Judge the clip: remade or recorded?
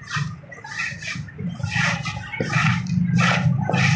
recorded